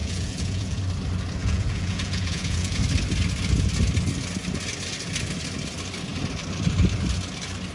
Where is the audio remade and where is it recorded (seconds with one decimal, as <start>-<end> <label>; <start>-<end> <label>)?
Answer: 0.0-0.8 remade; 0.8-1.4 recorded; 1.4-2.8 remade; 2.8-7.7 recorded

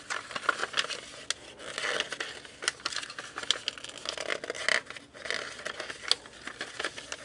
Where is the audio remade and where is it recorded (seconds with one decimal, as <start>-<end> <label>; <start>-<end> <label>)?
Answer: 0.0-7.2 recorded

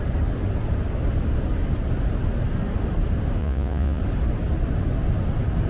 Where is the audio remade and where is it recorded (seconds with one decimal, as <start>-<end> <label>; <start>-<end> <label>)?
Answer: 0.0-3.4 recorded; 3.4-4.0 remade; 4.0-5.7 recorded

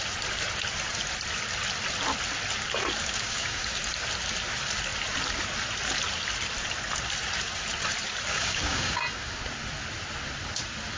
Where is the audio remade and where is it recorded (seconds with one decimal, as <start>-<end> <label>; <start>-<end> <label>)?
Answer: 0.0-3.0 recorded; 3.0-3.7 remade; 3.7-8.3 recorded; 8.3-9.0 remade; 9.0-11.0 recorded

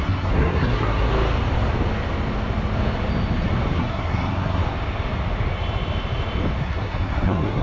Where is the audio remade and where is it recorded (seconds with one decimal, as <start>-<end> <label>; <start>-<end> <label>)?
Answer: 0.0-1.1 remade; 1.1-3.7 recorded; 3.7-4.6 remade; 4.6-6.6 recorded; 6.6-7.6 remade

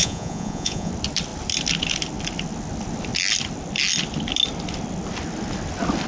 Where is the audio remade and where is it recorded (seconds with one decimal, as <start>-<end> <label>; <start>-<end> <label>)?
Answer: 0.0-0.9 remade; 0.9-6.1 recorded

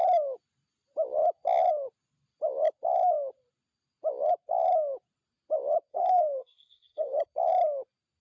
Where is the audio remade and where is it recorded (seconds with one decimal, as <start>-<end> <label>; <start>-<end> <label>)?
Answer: 0.0-5.9 recorded; 5.9-7.2 remade; 7.2-8.2 recorded